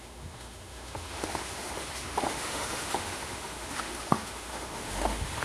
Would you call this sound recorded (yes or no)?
no